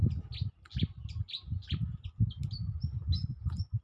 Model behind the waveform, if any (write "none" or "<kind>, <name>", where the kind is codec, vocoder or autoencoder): none